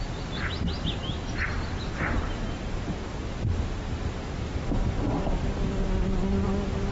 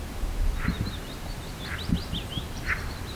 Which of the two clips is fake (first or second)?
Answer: second